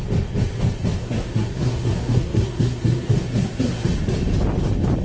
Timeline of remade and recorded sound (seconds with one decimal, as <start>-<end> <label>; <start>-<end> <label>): 0.0-1.0 recorded; 1.0-3.9 remade; 3.9-5.0 recorded